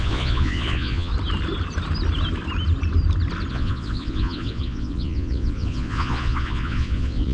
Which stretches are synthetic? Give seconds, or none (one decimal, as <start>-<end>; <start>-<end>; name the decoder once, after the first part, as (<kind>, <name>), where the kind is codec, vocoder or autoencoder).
0.0-1.1 (vocoder, Vocos); 3.5-7.3